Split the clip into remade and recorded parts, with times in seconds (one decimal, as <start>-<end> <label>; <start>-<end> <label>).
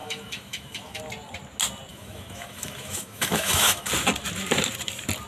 0.0-1.0 remade; 1.0-1.9 recorded; 1.9-3.9 remade; 3.9-5.3 recorded